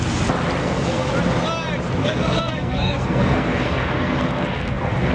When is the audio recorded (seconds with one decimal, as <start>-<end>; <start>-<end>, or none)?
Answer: 0.0-0.6; 1.1-2.0